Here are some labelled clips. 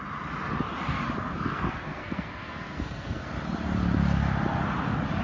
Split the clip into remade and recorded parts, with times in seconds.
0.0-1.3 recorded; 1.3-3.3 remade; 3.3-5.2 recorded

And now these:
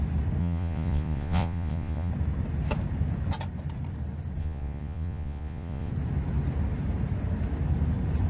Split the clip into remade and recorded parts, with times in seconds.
0.0-0.4 recorded; 0.4-2.1 remade; 2.1-4.4 recorded; 4.4-5.9 remade; 5.9-8.3 recorded

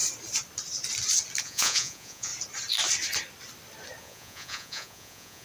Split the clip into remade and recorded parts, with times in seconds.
0.0-1.4 recorded; 1.4-2.3 remade; 2.3-4.0 recorded; 4.0-5.4 remade

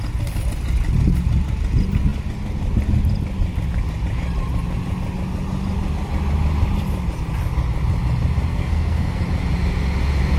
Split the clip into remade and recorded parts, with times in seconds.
0.0-8.5 recorded; 8.5-9.2 remade; 9.2-10.4 recorded

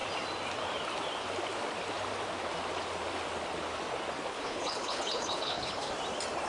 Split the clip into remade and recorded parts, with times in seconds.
0.0-4.3 recorded; 4.3-5.9 remade; 5.9-6.5 recorded

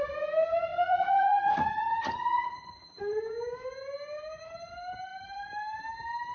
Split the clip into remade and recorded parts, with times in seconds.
0.0-0.7 recorded; 0.7-3.2 remade; 3.2-6.3 recorded